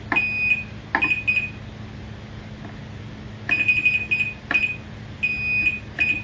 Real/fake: real